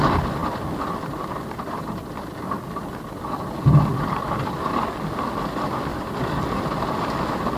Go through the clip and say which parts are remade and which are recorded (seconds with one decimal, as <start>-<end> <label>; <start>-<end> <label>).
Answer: 0.0-5.9 recorded; 5.9-6.6 remade; 6.6-7.6 recorded